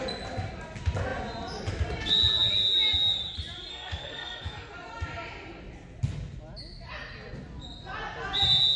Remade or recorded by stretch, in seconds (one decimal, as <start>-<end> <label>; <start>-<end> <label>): 0.0-3.7 recorded; 3.7-4.7 remade; 4.7-8.8 recorded